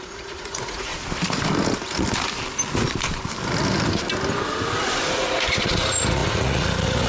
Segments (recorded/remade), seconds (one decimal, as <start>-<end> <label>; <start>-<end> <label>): 0.0-0.9 remade; 0.9-5.1 recorded; 5.1-7.1 remade